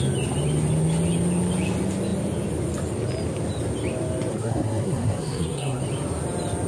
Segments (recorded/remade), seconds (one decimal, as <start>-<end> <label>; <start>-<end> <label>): 0.0-4.3 recorded; 4.3-5.8 remade; 5.8-6.7 recorded